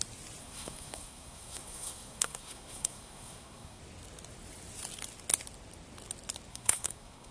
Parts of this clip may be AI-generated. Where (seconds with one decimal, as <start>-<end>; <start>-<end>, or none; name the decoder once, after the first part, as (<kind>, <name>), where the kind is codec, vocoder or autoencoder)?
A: 0.4-3.8 (codec, SNAC); 6.5-7.3